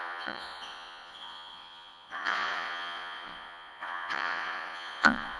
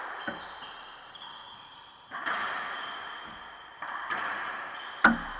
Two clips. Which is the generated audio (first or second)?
first